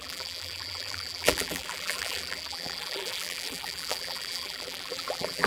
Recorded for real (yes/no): no